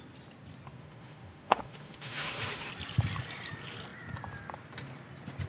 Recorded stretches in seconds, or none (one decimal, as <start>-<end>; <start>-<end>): 0.0-0.8; 2.7-5.5